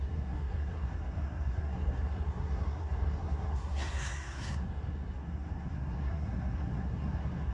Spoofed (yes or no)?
yes